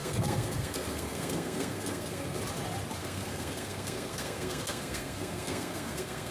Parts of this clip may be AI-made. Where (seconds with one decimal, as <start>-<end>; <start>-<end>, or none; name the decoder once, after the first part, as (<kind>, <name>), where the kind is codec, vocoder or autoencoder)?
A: 0.0-2.4 (codec, SNAC); 3.0-6.3